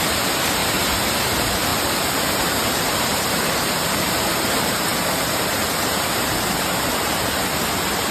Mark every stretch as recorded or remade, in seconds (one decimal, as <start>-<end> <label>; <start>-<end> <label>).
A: 0.0-0.6 remade; 0.6-1.2 recorded; 1.2-4.9 remade; 4.9-5.4 recorded; 5.4-8.1 remade

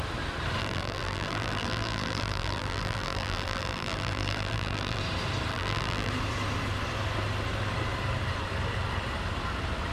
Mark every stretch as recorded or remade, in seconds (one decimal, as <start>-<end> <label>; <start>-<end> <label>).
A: 0.0-0.6 recorded; 0.6-5.0 remade; 5.0-5.5 recorded; 5.5-6.1 remade; 6.1-9.9 recorded

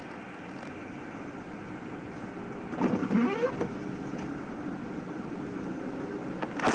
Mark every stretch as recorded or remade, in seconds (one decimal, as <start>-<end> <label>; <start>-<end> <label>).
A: 0.0-6.7 recorded

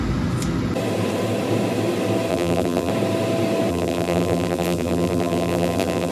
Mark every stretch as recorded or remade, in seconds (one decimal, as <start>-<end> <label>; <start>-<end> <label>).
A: 0.0-2.3 recorded; 2.3-2.9 remade; 2.9-3.7 recorded; 3.7-6.1 remade

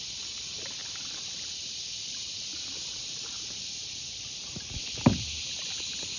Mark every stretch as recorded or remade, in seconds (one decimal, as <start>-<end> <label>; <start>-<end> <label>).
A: 0.0-0.8 recorded; 0.8-1.6 remade; 1.6-2.5 recorded; 2.5-5.5 remade; 5.5-6.2 recorded

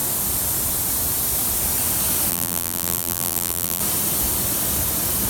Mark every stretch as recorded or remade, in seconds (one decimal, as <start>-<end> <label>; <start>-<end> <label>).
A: 0.0-2.3 recorded; 2.3-3.8 remade; 3.8-5.3 recorded

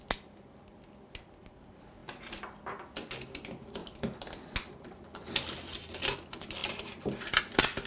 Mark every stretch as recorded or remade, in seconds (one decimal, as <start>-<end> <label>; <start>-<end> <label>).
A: 0.0-7.9 recorded

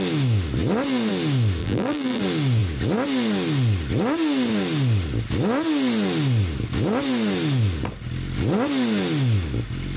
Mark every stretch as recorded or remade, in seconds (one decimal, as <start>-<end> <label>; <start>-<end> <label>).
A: 0.0-1.6 recorded; 1.6-2.2 remade; 2.2-10.0 recorded